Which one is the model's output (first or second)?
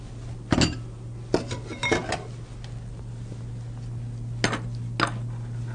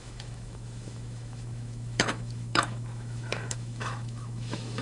second